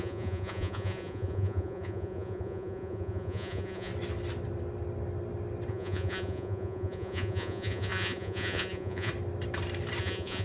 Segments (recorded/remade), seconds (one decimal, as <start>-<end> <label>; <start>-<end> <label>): 0.0-3.9 remade; 3.9-5.7 recorded; 5.7-9.1 remade; 9.1-10.0 recorded; 10.0-10.4 remade

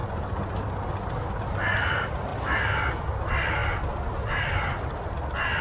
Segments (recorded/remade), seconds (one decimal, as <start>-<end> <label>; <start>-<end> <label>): 0.0-5.6 recorded

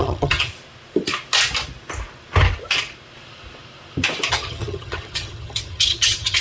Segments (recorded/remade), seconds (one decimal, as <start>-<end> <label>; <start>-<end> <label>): 0.0-0.5 remade; 0.5-4.3 recorded; 4.3-6.4 remade

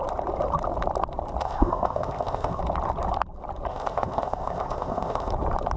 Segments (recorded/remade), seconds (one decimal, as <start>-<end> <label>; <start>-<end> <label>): 0.0-1.4 recorded; 1.4-2.6 remade; 2.6-3.7 recorded; 3.7-5.3 remade; 5.3-5.8 recorded

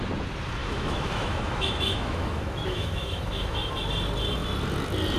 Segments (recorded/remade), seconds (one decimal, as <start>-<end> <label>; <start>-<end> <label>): 0.0-0.6 recorded; 0.6-3.7 remade; 3.7-5.2 recorded